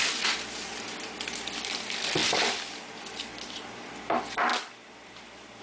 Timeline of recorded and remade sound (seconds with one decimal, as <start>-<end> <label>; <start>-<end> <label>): 0.0-4.5 remade; 4.5-5.6 recorded